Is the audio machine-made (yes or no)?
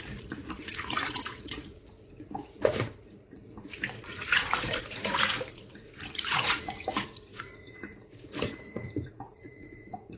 yes